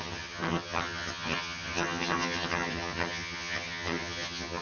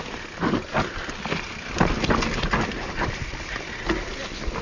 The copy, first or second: first